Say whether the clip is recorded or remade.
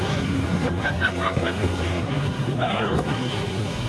remade